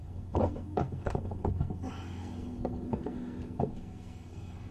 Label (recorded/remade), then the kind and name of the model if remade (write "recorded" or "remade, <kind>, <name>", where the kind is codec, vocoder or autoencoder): remade, codec, SNAC